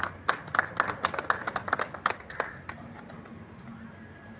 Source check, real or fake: real